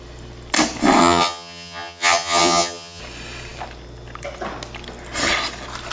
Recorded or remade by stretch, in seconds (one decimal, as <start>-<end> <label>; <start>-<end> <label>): 0.0-1.0 recorded; 1.0-3.0 remade; 3.0-5.9 recorded